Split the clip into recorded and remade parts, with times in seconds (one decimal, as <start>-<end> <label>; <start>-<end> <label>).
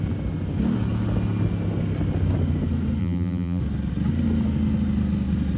0.0-3.0 recorded; 3.0-3.6 remade; 3.6-5.6 recorded